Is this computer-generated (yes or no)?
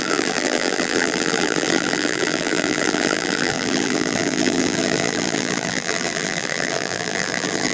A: yes